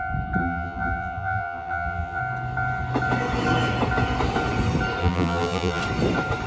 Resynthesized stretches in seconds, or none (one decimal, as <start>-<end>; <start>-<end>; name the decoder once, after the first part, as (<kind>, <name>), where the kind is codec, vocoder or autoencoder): 0.4-2.2 (vocoder, BigVGAN v2); 5.0-5.8